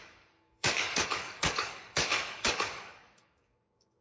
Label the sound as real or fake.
fake